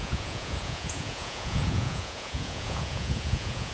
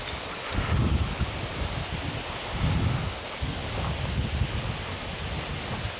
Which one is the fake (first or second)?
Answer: first